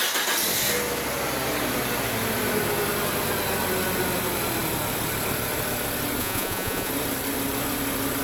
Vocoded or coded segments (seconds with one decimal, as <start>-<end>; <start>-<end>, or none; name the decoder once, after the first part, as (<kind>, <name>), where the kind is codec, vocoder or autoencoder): 6.2-6.9 (vocoder, Vocos)